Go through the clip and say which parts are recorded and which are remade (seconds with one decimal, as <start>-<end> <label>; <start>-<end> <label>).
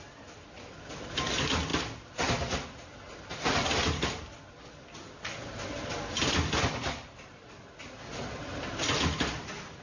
0.0-9.8 recorded